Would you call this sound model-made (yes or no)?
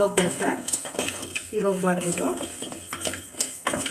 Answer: yes